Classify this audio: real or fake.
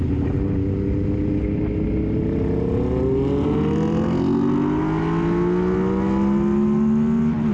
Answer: real